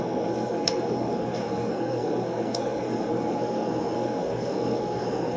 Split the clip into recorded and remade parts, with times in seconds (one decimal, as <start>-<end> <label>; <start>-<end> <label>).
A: 0.0-5.4 remade